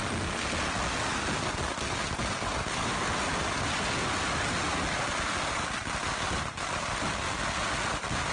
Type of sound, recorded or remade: recorded